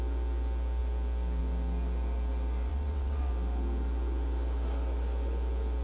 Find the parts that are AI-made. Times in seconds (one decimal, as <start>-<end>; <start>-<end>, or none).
2.7-3.3